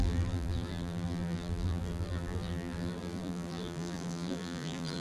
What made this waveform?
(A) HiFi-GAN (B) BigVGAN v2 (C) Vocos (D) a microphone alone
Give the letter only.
B